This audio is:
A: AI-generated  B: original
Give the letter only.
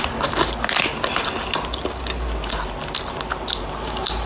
B